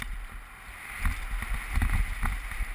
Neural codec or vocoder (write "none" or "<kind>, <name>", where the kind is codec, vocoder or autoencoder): none